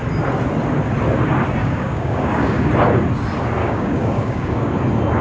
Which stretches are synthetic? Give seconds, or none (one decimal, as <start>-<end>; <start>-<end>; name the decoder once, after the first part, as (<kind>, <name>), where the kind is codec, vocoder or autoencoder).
1.6-2.7 (codec, DAC); 3.6-4.7